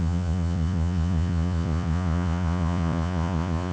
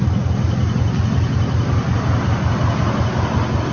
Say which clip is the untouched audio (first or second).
second